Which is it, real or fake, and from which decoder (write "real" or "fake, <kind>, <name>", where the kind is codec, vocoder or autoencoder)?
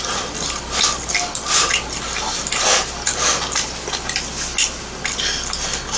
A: real